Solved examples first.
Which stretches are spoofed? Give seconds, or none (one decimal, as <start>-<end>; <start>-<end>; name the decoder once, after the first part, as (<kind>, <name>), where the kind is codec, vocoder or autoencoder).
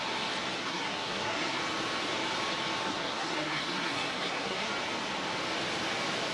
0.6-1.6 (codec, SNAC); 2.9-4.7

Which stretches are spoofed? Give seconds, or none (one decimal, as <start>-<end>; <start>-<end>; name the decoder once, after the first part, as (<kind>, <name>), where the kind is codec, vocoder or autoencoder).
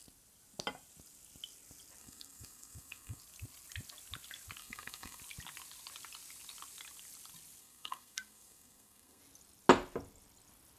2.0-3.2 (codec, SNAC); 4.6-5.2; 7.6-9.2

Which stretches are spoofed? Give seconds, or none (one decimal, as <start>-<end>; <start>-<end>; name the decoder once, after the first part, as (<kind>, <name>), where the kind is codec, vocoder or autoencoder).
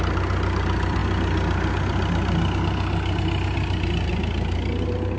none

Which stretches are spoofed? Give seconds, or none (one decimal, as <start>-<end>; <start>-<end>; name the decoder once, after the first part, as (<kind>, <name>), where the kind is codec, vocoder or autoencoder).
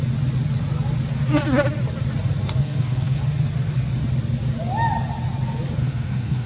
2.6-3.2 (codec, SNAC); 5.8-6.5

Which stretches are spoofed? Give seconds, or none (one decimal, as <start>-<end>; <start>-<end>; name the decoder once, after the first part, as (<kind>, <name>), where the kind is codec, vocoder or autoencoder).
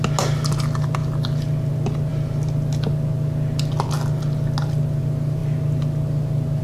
none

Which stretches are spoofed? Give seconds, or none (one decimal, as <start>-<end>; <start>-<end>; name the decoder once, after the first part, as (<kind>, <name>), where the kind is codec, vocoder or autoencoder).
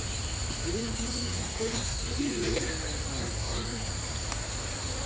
0.8-2.7 (codec, SNAC); 3.2-3.9